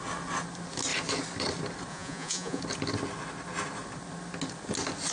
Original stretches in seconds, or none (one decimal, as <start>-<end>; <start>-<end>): 0.0-1.9; 2.6-5.1